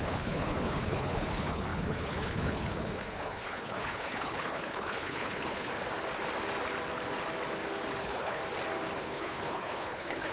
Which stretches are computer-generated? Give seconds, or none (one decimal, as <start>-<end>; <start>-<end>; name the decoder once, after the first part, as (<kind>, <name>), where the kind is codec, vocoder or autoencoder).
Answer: 0.0-5.7 (codec, HILCodec); 8.0-8.4; 9.0-10.3